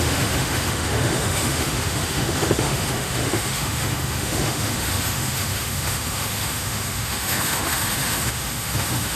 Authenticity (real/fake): fake